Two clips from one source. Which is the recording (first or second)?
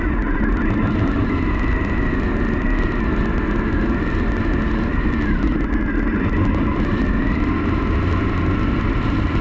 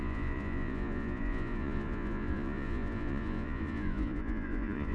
first